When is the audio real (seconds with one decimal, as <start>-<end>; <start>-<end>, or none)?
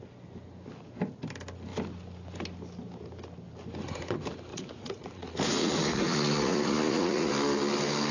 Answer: 0.0-4.5; 7.3-8.1